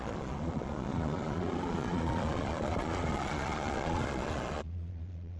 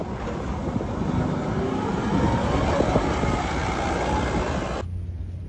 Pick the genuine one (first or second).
second